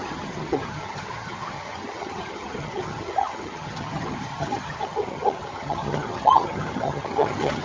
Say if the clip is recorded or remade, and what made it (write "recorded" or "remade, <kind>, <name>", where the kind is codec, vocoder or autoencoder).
remade, vocoder, HiFi-GAN